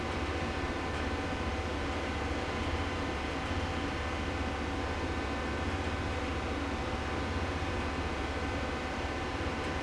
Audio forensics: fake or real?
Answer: real